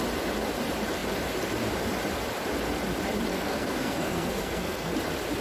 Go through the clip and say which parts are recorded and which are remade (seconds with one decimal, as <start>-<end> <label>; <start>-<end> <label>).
0.0-3.3 recorded; 3.3-4.9 remade; 4.9-5.4 recorded

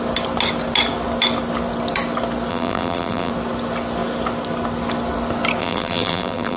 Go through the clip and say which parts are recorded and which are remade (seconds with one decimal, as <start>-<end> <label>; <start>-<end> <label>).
0.0-2.5 recorded; 2.5-3.3 remade; 3.3-5.6 recorded; 5.6-6.6 remade

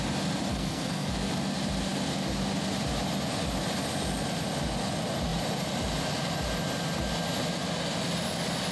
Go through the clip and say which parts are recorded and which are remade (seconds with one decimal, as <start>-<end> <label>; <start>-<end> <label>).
0.0-0.5 recorded; 0.5-1.1 remade; 1.1-8.7 recorded

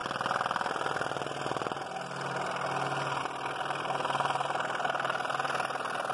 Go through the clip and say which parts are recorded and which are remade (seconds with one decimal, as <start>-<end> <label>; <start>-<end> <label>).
0.0-6.1 recorded

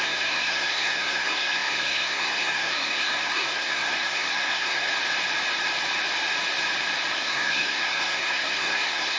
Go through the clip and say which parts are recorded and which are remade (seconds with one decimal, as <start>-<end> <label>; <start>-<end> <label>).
0.0-4.9 remade; 4.9-7.1 recorded; 7.1-9.2 remade

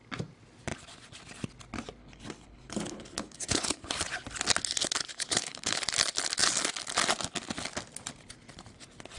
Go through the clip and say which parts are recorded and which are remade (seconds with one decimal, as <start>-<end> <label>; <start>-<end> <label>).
0.0-2.0 recorded; 2.0-3.9 remade; 3.9-5.1 recorded; 5.1-5.8 remade; 5.8-9.2 recorded

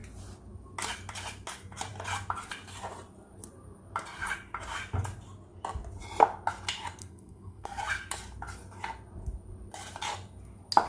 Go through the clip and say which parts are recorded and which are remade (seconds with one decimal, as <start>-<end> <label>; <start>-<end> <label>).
0.0-7.0 recorded; 7.0-7.8 remade; 7.8-10.9 recorded

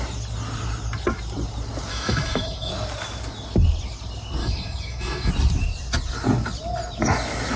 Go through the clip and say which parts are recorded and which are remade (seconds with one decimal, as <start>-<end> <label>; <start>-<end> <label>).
0.0-1.9 recorded; 1.9-2.7 remade; 2.7-4.4 recorded; 4.4-5.3 remade; 5.3-7.6 recorded